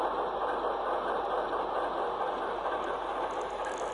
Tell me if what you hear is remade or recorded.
recorded